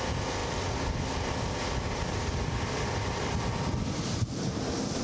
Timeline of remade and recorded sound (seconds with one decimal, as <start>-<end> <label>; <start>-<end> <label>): 0.0-5.0 recorded